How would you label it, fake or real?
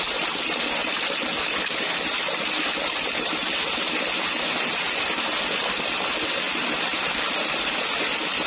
real